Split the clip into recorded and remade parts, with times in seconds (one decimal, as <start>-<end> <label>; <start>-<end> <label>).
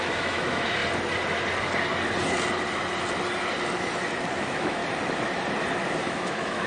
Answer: 0.0-0.8 remade; 0.8-4.3 recorded; 4.3-4.8 remade; 4.8-6.0 recorded; 6.0-6.7 remade